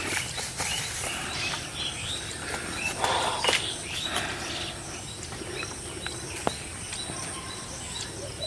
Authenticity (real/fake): real